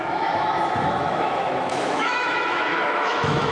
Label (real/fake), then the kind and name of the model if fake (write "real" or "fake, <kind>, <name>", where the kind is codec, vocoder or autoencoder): fake, autoencoder, DAC-VAE